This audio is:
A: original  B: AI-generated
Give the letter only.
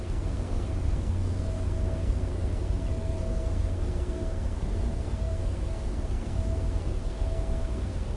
B